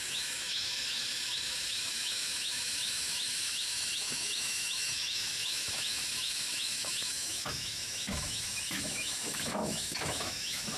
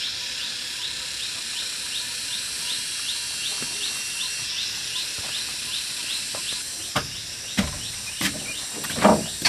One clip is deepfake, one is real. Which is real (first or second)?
second